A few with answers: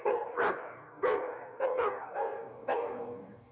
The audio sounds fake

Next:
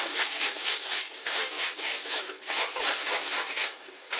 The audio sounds fake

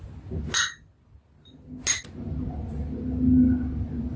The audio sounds real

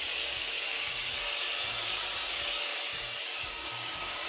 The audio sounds fake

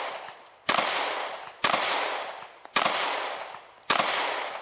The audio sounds real